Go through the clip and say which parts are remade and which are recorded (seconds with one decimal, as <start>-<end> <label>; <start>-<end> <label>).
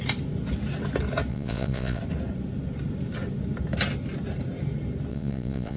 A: 0.0-1.3 recorded; 1.3-2.0 remade; 2.0-5.1 recorded; 5.1-5.8 remade